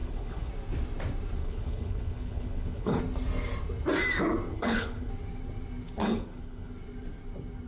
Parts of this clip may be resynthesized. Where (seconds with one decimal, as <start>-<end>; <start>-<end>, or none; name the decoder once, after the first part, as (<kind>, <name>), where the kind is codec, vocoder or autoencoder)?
0.0-0.5 (codec, HILCodec); 1.4-3.0; 4.5-5.1; 6.0-6.7

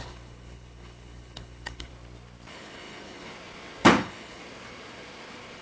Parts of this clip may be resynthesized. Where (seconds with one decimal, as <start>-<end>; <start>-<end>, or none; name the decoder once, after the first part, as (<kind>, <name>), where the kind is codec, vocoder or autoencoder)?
0.0-1.9 (codec, HILCodec); 2.5-3.3; 4.0-4.4

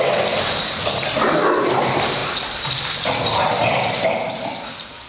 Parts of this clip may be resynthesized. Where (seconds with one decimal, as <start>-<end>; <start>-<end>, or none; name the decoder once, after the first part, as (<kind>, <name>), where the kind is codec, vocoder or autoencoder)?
none

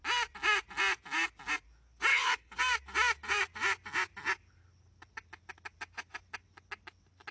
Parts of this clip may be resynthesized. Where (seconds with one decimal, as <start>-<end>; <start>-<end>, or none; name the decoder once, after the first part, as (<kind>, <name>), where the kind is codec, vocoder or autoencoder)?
2.1-2.6 (codec, HILCodec)

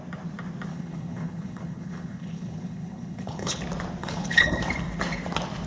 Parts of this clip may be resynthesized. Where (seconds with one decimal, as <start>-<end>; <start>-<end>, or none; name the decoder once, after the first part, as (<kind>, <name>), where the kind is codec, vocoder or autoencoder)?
0.7-3.6 (codec, HILCodec); 4.0-4.6

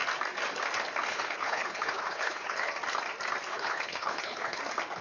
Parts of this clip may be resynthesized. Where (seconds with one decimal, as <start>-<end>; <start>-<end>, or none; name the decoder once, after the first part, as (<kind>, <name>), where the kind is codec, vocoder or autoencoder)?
1.1-2.7 (codec, HILCodec); 3.5-4.6